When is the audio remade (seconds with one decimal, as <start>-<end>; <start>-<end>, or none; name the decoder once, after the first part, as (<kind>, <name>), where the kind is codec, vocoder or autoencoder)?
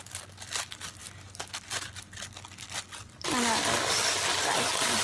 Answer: none